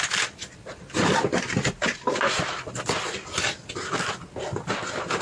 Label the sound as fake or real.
real